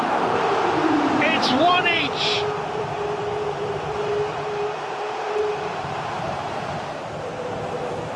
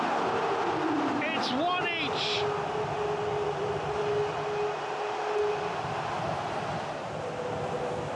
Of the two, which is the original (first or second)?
second